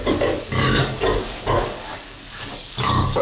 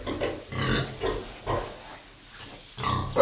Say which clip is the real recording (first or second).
second